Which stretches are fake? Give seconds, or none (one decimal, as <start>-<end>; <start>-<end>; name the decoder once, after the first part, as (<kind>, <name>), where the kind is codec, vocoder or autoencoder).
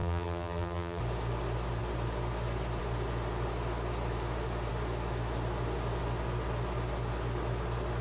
0.0-1.0 (vocoder, BigVGAN v2)